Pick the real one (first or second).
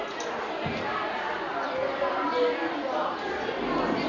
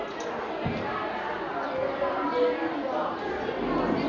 second